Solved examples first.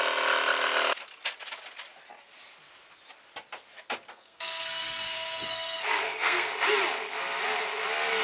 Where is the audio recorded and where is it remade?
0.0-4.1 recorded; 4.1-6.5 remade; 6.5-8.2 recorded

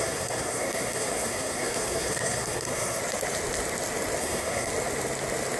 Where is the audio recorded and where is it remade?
0.0-3.0 remade; 3.0-4.2 recorded; 4.2-4.7 remade; 4.7-5.6 recorded

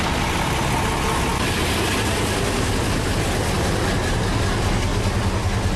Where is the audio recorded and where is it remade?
0.0-5.8 recorded